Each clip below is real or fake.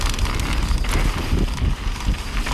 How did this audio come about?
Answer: real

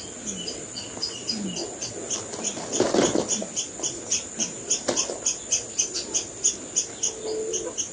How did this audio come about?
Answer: real